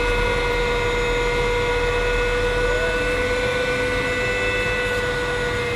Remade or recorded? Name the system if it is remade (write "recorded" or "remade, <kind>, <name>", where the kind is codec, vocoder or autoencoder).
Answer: recorded